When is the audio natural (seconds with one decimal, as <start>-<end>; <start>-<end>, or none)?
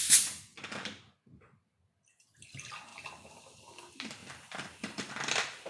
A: 0.0-4.2; 5.1-5.7